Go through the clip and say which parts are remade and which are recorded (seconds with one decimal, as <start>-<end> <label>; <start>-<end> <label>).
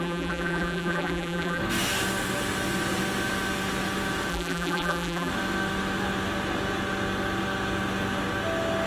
0.0-1.6 remade; 1.6-4.3 recorded; 4.3-5.3 remade; 5.3-8.9 recorded